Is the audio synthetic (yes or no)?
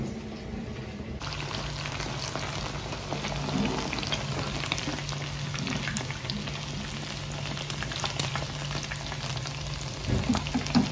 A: no